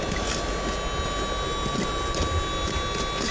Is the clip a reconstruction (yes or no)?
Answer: no